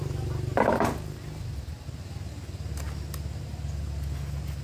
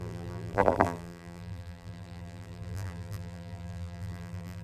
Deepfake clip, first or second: second